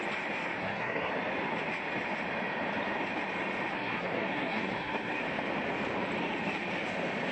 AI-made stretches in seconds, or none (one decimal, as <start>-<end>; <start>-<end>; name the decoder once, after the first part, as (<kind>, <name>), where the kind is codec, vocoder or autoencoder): 0.6-1.1 (codec, SNAC); 3.7-5.2